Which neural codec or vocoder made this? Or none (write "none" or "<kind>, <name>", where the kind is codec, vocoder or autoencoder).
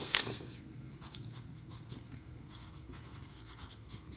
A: codec, SNAC